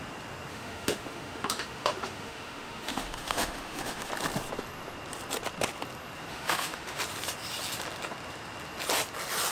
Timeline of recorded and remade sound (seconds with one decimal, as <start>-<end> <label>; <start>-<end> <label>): 0.0-0.5 recorded; 0.5-4.1 remade; 4.1-6.3 recorded; 6.3-7.0 remade; 7.0-9.5 recorded